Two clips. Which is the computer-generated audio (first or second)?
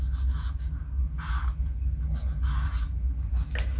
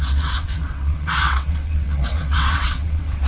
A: second